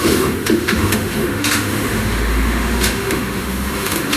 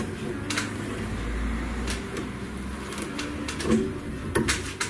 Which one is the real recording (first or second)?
second